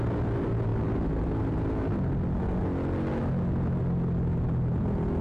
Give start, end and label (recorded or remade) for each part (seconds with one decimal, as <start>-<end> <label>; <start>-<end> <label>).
0.0-5.2 recorded